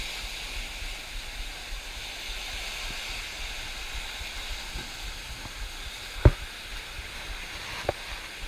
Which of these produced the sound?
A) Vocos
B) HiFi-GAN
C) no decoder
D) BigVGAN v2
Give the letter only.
C